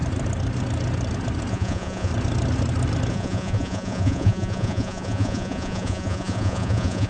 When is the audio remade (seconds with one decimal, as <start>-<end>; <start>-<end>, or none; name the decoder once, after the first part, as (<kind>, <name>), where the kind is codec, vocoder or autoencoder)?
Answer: 1.5-2.1 (vocoder, Vocos); 3.1-7.1